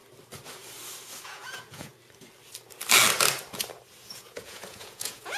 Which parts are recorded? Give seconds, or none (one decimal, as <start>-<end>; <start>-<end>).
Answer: 0.0-1.2; 1.9-4.1